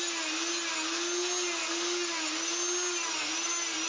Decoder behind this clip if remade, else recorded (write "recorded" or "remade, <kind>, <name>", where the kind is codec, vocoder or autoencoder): recorded